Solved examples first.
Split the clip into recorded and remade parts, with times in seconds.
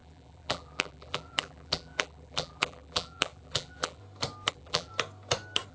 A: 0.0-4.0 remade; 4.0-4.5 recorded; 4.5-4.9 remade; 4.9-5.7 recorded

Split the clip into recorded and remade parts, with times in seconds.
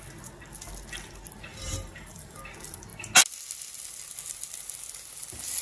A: 0.0-1.5 recorded; 1.5-2.4 remade; 2.4-5.6 recorded